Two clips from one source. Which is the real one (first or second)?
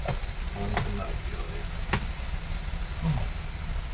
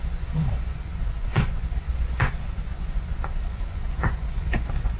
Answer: first